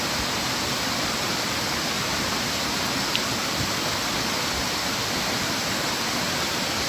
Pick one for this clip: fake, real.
real